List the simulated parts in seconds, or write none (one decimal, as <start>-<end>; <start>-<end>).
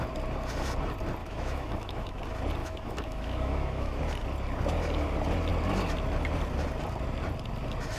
1.2-2.2; 2.6-4.0